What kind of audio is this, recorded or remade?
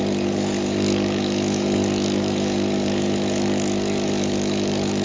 remade